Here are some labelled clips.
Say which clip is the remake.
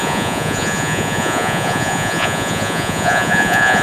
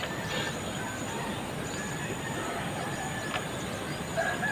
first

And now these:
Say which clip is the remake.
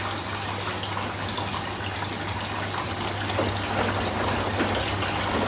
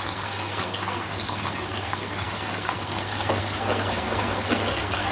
second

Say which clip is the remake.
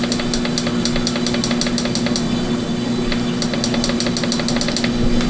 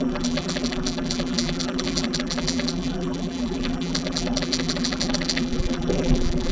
second